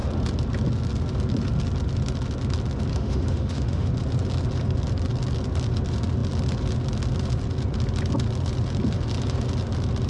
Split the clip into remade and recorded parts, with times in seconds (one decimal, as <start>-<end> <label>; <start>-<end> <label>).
0.0-2.9 recorded; 2.9-3.9 remade; 3.9-10.1 recorded